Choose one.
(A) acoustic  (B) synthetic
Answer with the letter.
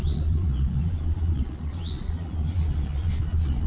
B